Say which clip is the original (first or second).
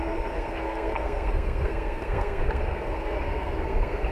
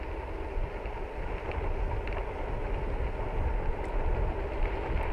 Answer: second